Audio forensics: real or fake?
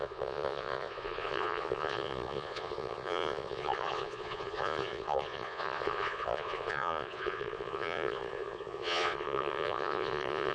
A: fake